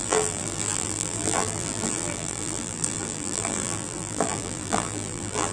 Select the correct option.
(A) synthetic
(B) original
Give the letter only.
A